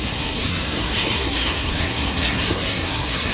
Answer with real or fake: fake